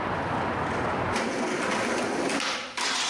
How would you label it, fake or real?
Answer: real